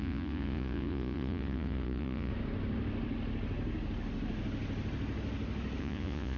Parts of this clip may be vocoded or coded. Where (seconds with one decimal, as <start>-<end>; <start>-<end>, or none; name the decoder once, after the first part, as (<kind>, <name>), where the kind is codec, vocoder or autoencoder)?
0.0-2.3 (vocoder, Vocos); 5.8-6.4